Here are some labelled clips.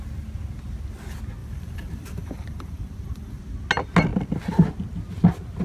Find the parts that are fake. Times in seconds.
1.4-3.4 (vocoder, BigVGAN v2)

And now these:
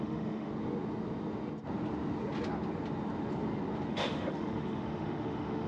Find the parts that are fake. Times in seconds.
0.0-0.5 (autoencoder, DAC-VAE); 3.9-5.7

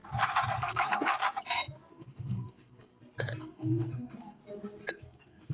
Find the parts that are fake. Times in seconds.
0.6-1.2 (codec, SNAC); 1.9-2.9; 3.4-4.4; 4.9-5.5